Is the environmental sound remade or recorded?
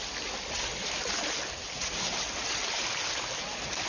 recorded